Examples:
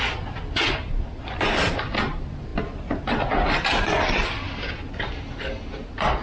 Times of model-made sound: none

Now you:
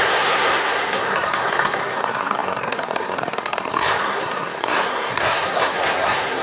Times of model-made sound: 0.0-6.4 (codec, SNAC)

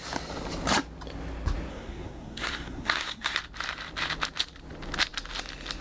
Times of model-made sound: 1.7-3.4 (codec, SNAC)

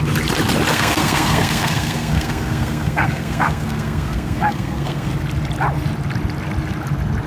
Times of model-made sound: 0.7-5.1 (codec, SNAC)